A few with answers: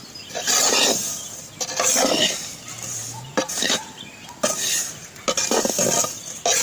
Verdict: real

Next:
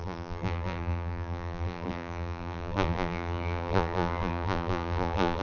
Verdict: fake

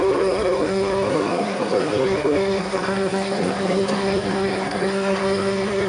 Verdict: fake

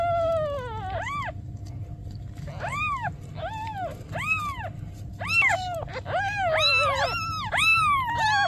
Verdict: real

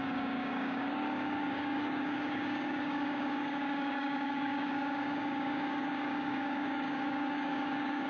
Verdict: fake